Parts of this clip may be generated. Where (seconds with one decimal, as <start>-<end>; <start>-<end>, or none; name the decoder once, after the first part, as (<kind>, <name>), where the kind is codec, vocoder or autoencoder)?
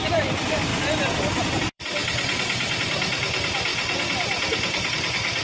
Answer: 0.0-0.7 (vocoder, BigVGAN v2); 1.3-2.0; 2.8-3.7; 4.9-5.4